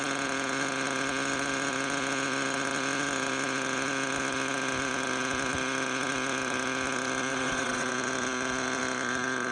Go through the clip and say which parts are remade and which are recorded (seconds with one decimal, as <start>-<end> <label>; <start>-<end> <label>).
0.0-7.3 recorded; 7.3-7.9 remade; 7.9-9.5 recorded